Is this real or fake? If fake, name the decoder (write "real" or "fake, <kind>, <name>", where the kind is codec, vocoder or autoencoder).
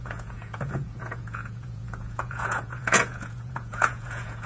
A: fake, vocoder, Vocos